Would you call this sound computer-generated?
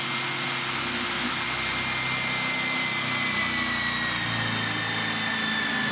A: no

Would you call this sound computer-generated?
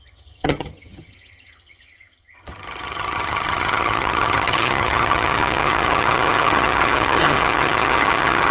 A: yes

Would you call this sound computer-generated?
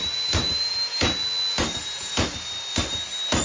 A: no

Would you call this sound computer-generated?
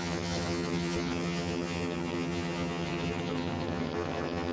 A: yes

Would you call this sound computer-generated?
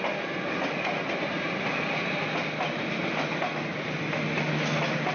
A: no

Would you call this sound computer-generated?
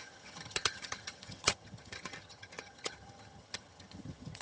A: yes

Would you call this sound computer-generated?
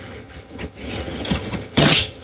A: yes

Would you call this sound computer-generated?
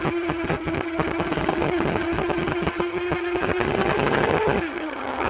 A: yes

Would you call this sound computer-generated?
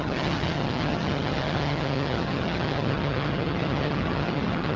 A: yes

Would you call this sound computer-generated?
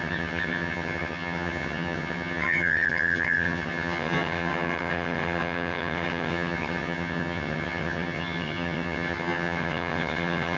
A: yes